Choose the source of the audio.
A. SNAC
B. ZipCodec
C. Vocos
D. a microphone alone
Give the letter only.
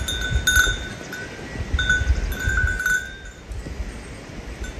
D